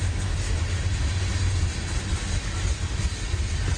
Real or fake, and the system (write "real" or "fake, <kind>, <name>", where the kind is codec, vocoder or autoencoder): real